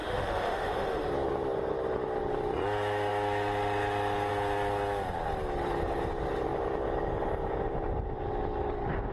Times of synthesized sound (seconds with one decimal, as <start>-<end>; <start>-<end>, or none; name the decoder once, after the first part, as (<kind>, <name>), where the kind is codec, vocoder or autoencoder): 0.0-1.1 (autoencoder, DAC-VAE)